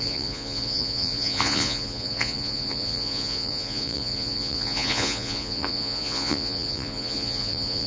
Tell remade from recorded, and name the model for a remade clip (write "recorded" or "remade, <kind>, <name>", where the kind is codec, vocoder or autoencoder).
remade, vocoder, Vocos